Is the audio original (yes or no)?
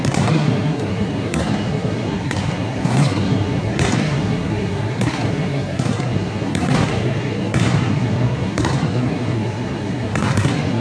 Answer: no